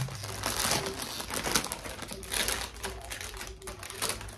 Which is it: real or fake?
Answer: real